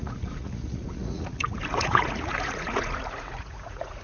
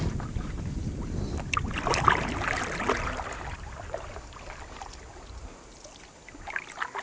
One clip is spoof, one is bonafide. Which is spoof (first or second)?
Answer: first